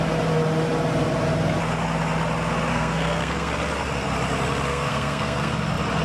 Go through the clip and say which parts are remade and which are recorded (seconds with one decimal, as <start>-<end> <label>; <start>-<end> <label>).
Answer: 0.0-2.7 recorded; 2.7-3.5 remade; 3.5-4.7 recorded; 4.7-5.5 remade; 5.5-6.0 recorded